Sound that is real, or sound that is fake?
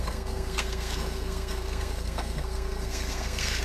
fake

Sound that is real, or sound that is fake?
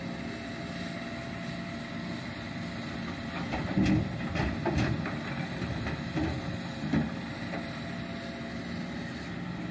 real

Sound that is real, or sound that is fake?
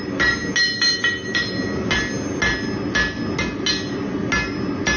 real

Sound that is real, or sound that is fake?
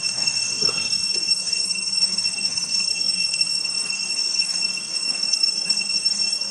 fake